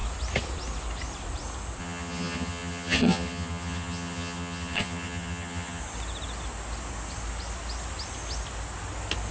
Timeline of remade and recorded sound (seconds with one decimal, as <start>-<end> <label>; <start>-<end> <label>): 0.0-1.8 recorded; 1.8-5.8 remade; 5.8-9.3 recorded